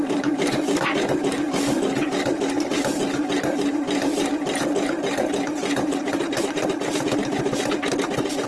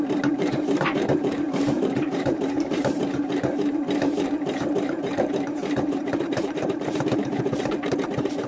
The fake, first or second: second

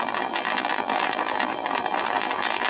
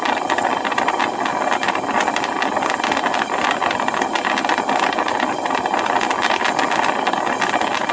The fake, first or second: first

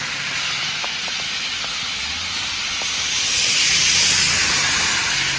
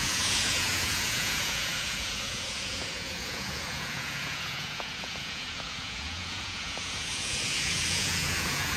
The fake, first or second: second